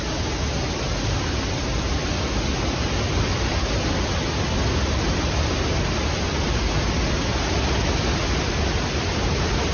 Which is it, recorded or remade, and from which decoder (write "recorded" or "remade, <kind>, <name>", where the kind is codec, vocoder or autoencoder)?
recorded